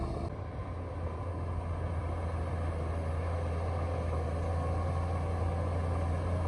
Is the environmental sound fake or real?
real